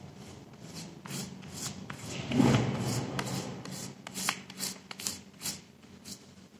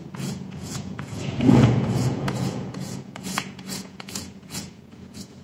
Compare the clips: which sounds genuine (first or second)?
first